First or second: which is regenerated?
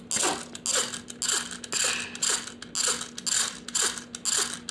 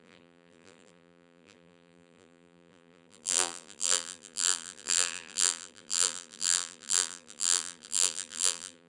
second